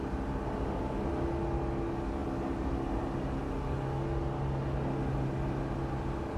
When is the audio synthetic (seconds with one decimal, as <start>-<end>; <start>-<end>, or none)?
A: none